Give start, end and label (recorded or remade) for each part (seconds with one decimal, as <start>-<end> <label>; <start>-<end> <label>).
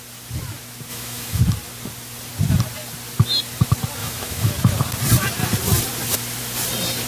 0.0-0.9 recorded; 0.9-1.4 remade; 1.4-4.0 recorded; 4.0-4.5 remade; 4.5-7.1 recorded